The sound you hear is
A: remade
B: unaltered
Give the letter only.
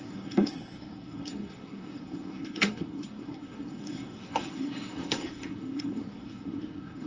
A